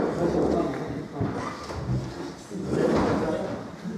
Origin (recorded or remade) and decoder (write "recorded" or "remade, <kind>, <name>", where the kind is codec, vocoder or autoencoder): recorded